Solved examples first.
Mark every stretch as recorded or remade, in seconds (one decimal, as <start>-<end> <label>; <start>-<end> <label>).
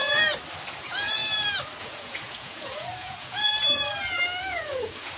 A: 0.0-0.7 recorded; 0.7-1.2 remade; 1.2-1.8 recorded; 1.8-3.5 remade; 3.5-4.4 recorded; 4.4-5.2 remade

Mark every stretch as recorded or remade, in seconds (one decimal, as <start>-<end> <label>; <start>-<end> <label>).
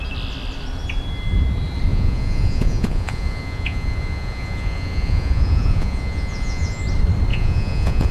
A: 0.0-1.9 recorded; 1.9-6.8 remade; 6.8-7.3 recorded; 7.3-8.1 remade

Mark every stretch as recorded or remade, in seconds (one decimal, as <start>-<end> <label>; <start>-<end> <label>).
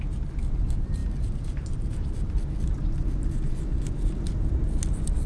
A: 0.0-5.3 recorded